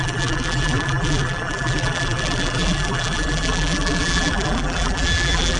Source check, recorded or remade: remade